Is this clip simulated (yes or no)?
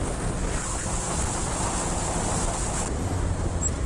no